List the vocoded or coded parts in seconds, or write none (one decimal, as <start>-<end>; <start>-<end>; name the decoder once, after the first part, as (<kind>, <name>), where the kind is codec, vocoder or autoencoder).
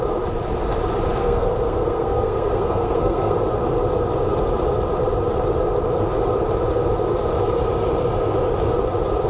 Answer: 1.2-3.4 (codec, SNAC)